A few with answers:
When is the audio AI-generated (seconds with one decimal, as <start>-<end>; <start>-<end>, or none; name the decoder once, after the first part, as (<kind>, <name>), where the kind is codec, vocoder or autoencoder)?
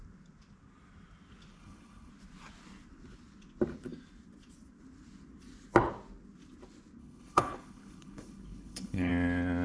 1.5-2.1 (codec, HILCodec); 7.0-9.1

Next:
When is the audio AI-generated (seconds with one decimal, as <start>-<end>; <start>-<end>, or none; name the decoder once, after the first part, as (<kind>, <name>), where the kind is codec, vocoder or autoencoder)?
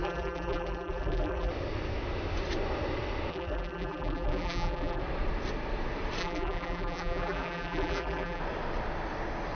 0.0-1.5 (vocoder, BigVGAN v2); 3.3-5.0; 6.2-8.4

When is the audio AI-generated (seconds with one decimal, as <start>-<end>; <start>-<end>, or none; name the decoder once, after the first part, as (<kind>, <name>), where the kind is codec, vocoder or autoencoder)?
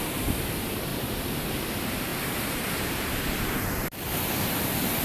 0.9-1.6 (vocoder, BigVGAN v2); 2.1-3.2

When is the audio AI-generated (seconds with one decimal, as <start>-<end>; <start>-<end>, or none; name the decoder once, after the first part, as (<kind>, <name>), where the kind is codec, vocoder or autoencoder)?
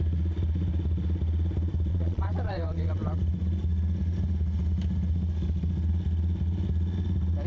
1.9-3.2 (vocoder, Vocos)